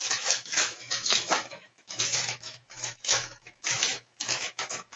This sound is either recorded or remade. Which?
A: remade